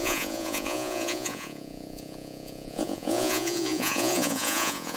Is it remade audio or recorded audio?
remade